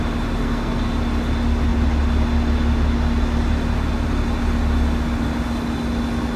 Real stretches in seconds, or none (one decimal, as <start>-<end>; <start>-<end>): 0.0-0.4; 0.9-6.4